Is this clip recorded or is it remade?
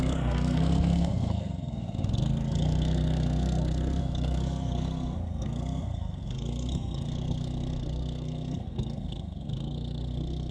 remade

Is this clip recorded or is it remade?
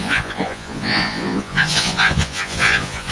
remade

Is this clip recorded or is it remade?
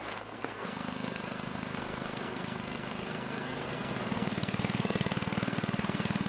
remade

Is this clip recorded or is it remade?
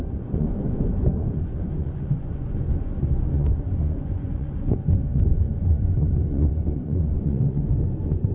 remade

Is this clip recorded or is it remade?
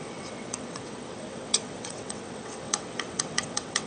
remade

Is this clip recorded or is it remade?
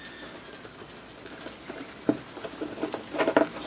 recorded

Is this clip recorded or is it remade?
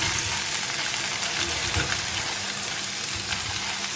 recorded